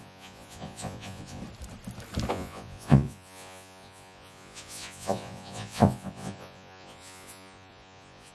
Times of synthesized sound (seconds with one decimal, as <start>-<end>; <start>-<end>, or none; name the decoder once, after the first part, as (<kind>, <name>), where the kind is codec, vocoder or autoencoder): 0.0-1.4 (vocoder, Vocos); 2.3-8.3